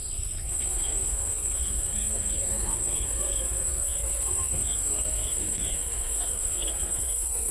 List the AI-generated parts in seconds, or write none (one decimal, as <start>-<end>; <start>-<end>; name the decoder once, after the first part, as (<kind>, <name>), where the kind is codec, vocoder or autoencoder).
0.0-7.5 (codec, SNAC)